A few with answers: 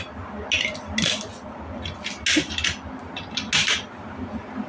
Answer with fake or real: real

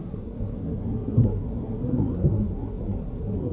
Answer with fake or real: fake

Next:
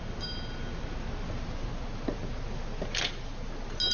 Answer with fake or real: real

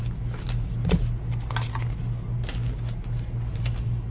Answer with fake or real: real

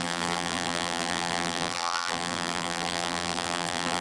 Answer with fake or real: fake